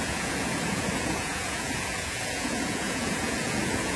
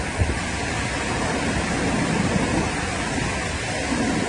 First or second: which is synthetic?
first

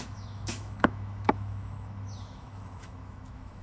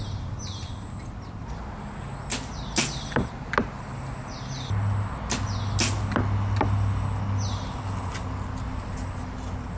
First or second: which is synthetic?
first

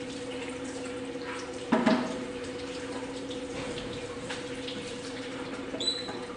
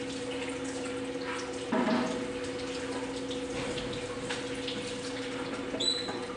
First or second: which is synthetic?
first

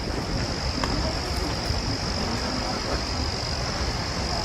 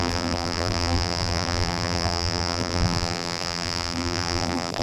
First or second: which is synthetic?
second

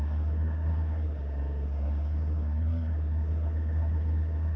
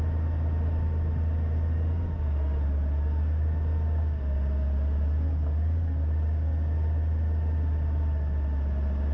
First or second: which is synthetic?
first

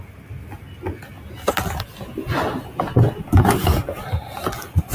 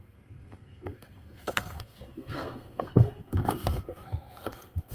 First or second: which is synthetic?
second